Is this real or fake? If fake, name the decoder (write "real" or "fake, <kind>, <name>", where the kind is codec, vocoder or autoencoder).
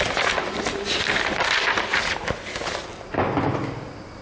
real